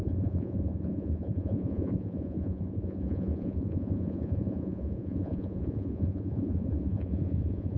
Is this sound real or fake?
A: fake